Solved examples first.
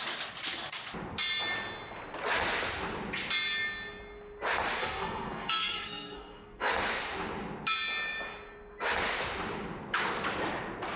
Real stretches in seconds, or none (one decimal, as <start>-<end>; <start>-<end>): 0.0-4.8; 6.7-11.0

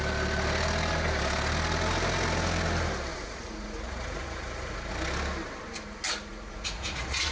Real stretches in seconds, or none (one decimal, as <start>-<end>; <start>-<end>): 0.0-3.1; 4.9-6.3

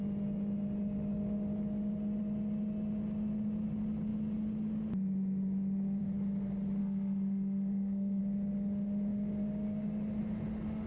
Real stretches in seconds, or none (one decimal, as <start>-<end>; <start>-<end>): 0.0-6.8; 8.2-10.9

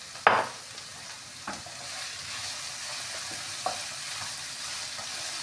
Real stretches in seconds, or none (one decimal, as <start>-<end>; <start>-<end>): 0.0-0.9; 1.4-3.6

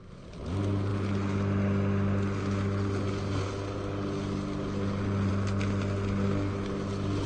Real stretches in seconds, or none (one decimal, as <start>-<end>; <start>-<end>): 0.0-7.3